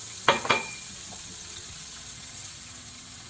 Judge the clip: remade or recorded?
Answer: remade